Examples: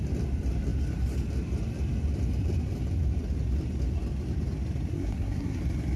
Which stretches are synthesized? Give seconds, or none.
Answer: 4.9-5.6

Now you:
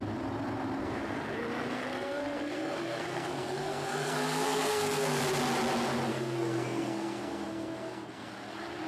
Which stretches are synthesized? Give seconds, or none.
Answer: 0.8-5.2; 6.1-8.3

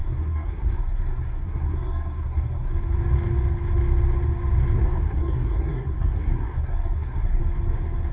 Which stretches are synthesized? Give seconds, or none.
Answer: 0.0-2.7; 4.8-7.4

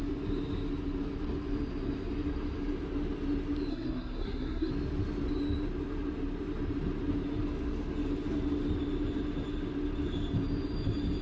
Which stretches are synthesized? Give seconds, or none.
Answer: 3.7-4.7

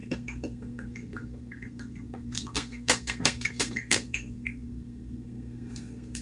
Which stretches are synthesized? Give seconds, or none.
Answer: 0.0-6.2

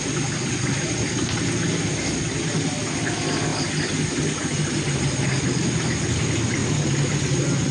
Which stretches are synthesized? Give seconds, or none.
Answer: none

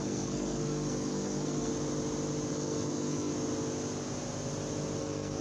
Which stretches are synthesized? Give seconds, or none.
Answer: 0.0-1.7; 2.5-3.3; 5.0-5.4

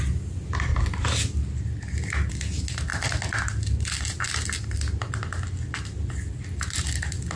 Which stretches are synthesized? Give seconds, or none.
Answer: none